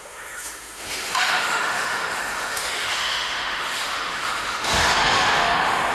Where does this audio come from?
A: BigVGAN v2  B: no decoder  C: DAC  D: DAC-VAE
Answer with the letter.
D